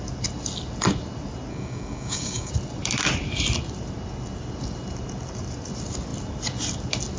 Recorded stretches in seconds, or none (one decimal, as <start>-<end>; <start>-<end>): 0.0-1.5; 2.5-7.2